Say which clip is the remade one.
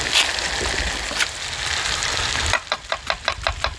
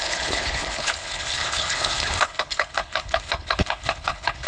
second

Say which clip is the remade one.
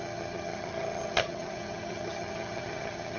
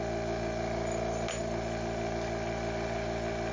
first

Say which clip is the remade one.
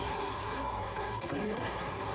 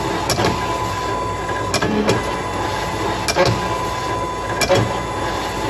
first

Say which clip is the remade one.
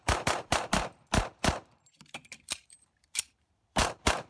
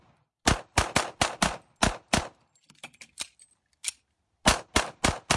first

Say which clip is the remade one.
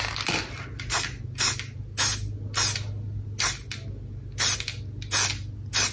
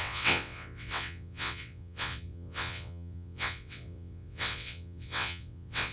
second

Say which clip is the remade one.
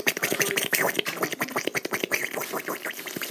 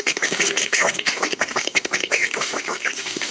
second